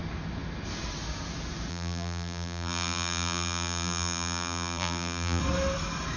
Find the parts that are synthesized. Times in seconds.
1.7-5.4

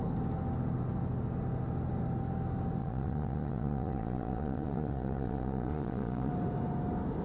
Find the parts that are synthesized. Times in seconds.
2.8-6.3

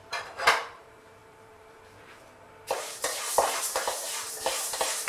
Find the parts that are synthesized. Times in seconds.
0.0-5.1

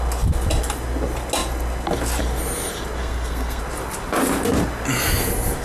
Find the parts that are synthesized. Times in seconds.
3.0-3.6

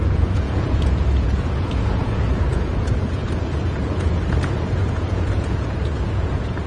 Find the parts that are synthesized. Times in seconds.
0.0-6.7

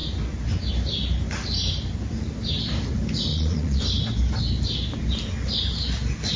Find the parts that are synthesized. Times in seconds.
3.3-3.8